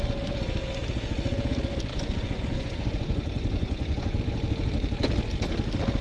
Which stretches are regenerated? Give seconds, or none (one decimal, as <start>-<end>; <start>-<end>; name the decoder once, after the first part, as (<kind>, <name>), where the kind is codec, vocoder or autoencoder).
1.9-4.2 (vocoder, Vocos)